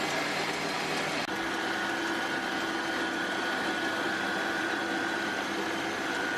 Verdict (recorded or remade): remade